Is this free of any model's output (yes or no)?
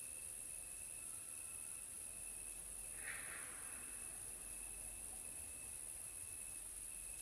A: yes